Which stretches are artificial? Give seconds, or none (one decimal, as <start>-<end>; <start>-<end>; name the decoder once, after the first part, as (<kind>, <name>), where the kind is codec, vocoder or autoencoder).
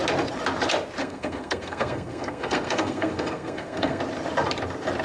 1.0-4.0 (codec, SNAC)